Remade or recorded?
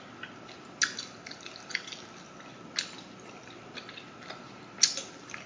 recorded